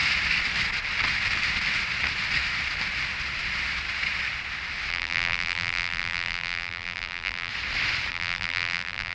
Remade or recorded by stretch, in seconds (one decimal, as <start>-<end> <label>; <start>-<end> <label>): 0.0-4.9 recorded; 4.9-7.5 remade; 7.5-8.1 recorded; 8.1-9.1 remade